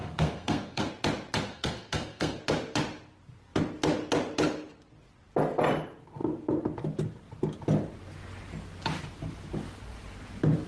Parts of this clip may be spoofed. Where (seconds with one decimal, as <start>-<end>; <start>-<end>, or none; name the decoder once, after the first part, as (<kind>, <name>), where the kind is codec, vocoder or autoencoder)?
0.0-0.9 (codec, SNAC); 1.5-2.4